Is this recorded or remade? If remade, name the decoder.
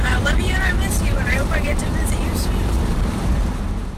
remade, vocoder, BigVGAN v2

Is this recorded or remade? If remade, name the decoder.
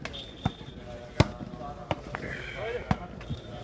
recorded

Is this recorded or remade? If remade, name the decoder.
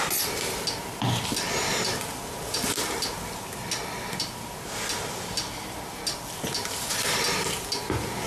recorded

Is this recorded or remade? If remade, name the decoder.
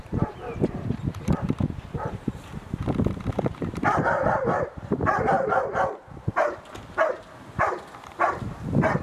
remade, vocoder, BigVGAN v2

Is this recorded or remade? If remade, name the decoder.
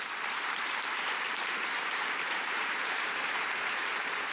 remade, vocoder, BigVGAN v2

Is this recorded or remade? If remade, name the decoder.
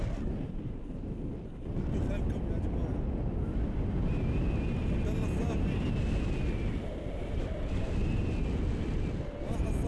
recorded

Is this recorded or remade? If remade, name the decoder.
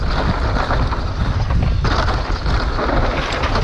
recorded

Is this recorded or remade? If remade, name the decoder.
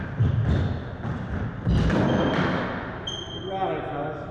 recorded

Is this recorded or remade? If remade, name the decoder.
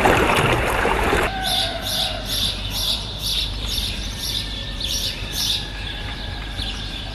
remade, vocoder, BigVGAN v2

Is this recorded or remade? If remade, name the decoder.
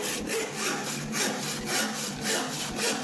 recorded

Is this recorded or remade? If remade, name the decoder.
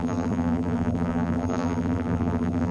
remade, vocoder, BigVGAN v2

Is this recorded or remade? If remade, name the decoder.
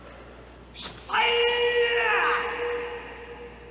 recorded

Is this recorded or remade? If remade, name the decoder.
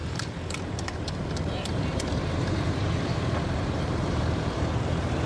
remade, vocoder, BigVGAN v2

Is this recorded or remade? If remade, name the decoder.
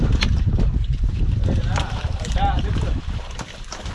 remade, vocoder, BigVGAN v2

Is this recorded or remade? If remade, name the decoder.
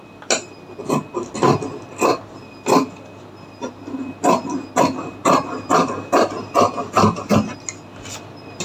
recorded